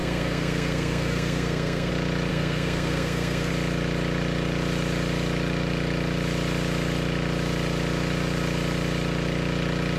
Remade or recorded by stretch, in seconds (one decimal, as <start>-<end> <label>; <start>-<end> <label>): 0.0-1.9 remade; 1.9-2.3 recorded; 2.3-3.5 remade; 3.5-10.0 recorded